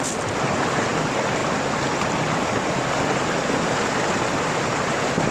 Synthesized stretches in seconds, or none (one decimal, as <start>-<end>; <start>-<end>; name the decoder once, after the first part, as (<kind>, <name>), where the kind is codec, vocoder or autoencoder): none

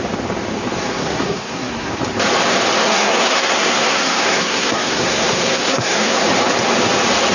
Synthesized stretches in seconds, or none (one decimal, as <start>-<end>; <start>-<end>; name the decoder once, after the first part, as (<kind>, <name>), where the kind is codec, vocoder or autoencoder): 0.8-1.9 (codec, SNAC); 2.8-6.2

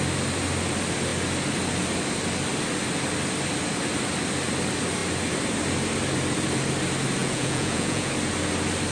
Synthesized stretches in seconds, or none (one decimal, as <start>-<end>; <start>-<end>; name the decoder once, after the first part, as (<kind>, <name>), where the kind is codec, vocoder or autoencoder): 7.2-8.1 (vocoder, Vocos)

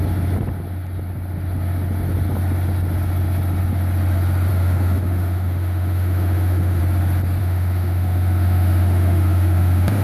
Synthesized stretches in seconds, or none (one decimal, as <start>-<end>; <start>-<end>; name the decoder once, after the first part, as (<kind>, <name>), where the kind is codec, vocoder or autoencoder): 4.5-6.8 (autoencoder, DAC-VAE); 7.4-10.0

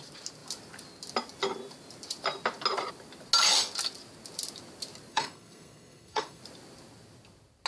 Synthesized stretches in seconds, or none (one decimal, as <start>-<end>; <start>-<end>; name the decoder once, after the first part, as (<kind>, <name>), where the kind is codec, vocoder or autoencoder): 5.1-6.4 (codec, SNAC)

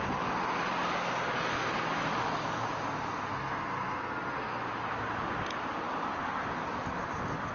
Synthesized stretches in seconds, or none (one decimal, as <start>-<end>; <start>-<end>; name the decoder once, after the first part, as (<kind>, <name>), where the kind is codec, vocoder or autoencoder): 3.4-4.6 (codec, SNAC)

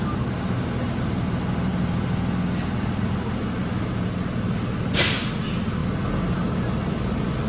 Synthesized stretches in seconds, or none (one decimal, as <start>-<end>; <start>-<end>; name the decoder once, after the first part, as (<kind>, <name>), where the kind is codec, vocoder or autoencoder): none

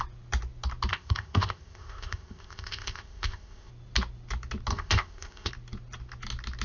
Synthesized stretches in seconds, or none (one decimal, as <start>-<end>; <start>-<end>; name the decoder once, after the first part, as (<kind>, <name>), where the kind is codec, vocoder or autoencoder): 0.9-3.7 (codec, ZipCodec); 4.7-5.5